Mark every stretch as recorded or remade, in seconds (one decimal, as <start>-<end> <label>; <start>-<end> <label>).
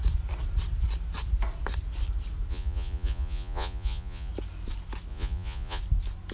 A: 0.0-2.5 recorded; 2.5-4.3 remade; 4.3-5.1 recorded; 5.1-5.8 remade; 5.8-6.3 recorded